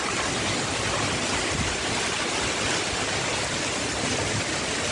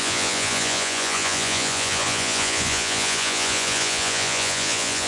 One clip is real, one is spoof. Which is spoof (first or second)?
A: second